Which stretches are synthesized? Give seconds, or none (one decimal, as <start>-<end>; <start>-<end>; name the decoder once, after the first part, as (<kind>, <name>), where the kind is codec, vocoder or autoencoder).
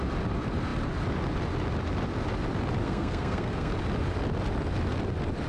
2.8-3.7 (codec, SNAC)